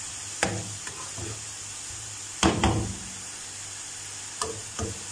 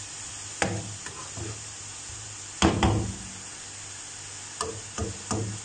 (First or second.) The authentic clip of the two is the second